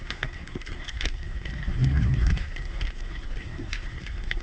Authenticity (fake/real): fake